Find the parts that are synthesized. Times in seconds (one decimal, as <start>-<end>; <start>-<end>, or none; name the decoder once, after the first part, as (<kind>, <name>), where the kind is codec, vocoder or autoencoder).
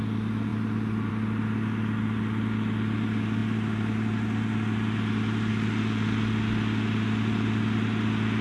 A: none